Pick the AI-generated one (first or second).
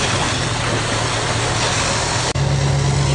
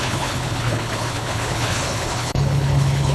second